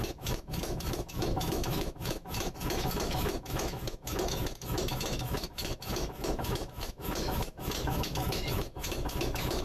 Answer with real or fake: fake